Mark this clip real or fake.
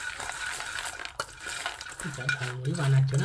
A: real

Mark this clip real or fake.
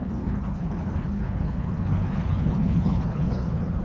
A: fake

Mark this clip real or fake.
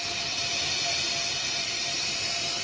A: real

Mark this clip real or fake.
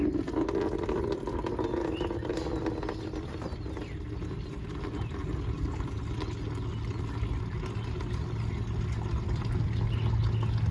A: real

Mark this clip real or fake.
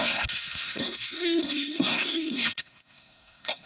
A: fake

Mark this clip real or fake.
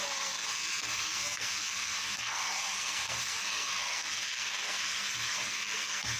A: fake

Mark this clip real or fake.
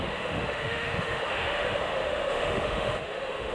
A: fake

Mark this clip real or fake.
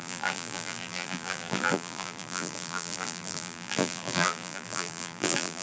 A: fake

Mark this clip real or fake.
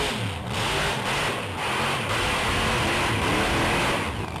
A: real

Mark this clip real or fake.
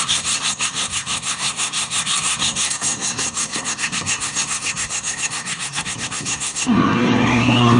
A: fake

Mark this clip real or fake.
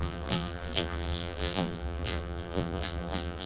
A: fake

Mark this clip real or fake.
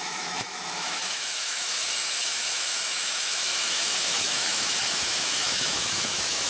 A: fake